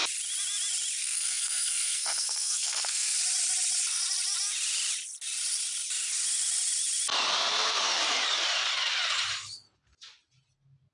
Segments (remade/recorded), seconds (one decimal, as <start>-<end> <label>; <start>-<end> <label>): 0.0-1.0 recorded; 1.0-3.2 remade; 3.2-10.9 recorded